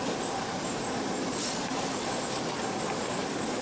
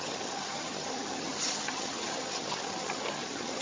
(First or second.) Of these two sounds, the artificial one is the second